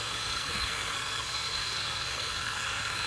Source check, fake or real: fake